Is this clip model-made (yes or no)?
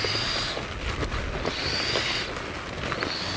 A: no